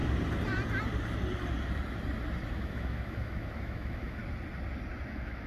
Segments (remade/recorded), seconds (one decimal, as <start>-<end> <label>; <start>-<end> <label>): 0.0-2.5 recorded; 2.5-4.2 remade; 4.2-5.1 recorded; 5.1-5.5 remade